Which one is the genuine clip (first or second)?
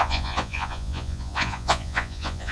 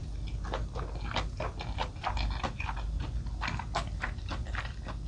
second